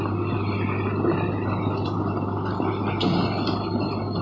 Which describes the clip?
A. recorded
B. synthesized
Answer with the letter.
A